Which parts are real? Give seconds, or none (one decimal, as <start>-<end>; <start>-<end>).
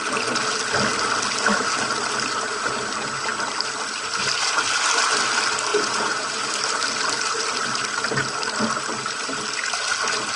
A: 0.0-5.7; 6.3-10.4